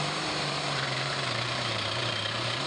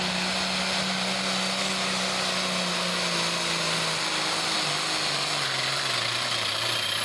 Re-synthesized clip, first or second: first